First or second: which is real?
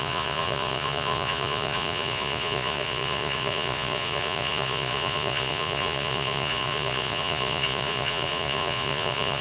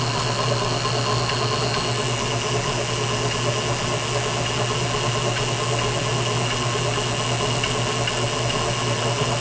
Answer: second